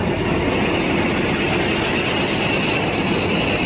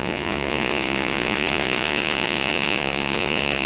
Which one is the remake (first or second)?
second